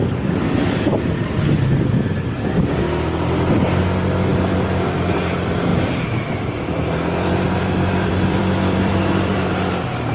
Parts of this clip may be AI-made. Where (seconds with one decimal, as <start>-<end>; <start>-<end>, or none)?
4.3-5.2; 5.7-9.5